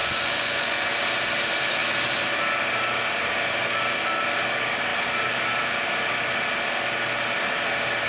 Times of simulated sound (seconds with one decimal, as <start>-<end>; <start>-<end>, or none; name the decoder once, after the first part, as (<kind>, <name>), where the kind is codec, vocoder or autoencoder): 0.0-0.9 (vocoder, Vocos)